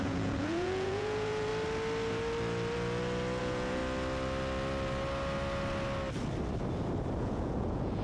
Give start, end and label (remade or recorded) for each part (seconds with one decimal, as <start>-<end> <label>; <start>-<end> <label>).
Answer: 0.0-1.5 remade; 1.5-3.4 recorded; 3.4-3.8 remade; 3.8-7.2 recorded; 7.2-8.0 remade